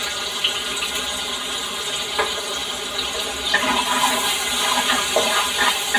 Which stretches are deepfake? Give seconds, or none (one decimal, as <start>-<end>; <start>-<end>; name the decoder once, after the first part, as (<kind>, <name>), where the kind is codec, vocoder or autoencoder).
none

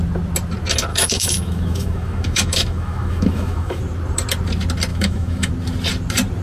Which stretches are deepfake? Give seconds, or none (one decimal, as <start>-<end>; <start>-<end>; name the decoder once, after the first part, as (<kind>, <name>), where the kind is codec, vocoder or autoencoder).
0.9-3.8 (autoencoder, DAC-VAE); 4.9-5.5

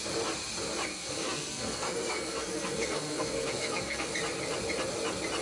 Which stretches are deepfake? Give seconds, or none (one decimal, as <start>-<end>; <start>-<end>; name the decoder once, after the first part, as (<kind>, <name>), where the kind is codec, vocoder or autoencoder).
0.9-4.1 (codec, SNAC)

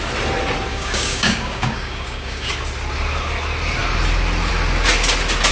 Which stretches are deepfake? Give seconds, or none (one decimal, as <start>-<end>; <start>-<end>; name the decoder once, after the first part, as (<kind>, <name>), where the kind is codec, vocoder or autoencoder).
0.7-2.5 (codec, DAC)

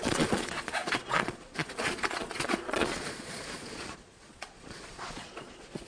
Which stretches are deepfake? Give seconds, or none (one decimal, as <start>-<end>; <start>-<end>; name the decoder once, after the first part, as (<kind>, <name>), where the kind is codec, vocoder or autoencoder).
0.0-5.9 (vocoder, Vocos)